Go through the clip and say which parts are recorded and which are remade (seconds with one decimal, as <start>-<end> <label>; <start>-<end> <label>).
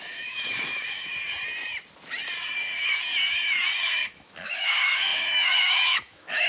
0.0-1.1 remade; 1.1-3.8 recorded; 3.8-6.5 remade